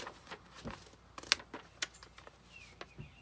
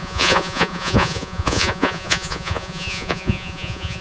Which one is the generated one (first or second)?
second